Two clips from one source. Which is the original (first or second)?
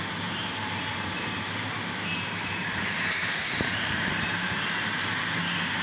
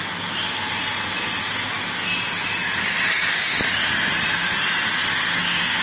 second